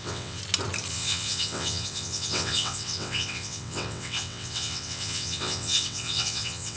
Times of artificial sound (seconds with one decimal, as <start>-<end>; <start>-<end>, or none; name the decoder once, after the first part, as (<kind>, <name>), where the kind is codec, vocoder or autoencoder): 0.0-0.4 (vocoder, WaveNeXt); 0.9-6.8